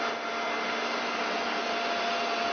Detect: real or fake real